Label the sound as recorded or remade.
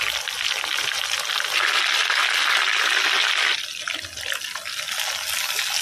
recorded